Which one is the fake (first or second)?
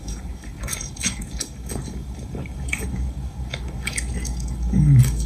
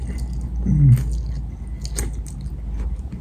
first